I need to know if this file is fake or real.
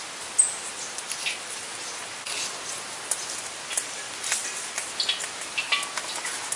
real